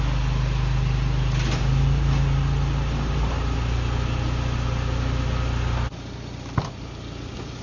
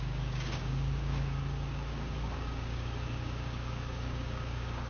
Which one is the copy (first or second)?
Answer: second